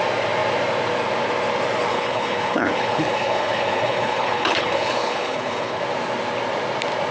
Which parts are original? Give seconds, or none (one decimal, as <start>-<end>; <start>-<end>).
0.0-1.9; 5.8-7.1

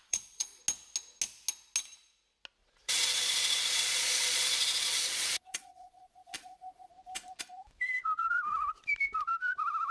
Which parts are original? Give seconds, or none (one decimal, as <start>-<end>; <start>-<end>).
0.6-2.6; 6.9-9.9

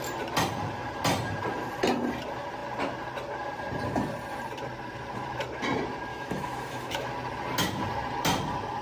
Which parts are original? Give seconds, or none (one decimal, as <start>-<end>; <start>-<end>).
0.0-6.1; 7.1-8.8

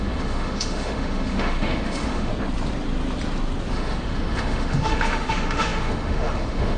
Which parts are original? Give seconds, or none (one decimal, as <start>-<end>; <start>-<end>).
2.3-3.7

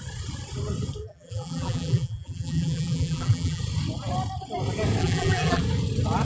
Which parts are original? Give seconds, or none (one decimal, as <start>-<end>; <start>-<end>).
0.0-1.0; 3.6-5.0; 5.6-6.2

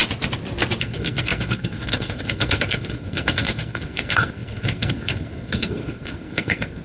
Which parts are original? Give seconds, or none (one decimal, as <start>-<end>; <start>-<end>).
0.0-0.8